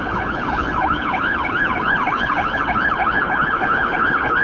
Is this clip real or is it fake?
fake